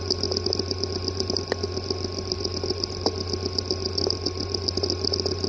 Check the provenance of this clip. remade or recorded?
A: recorded